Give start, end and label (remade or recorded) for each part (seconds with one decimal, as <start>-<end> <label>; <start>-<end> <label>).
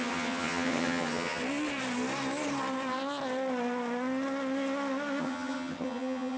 0.0-1.4 remade; 1.4-5.2 recorded; 5.2-6.4 remade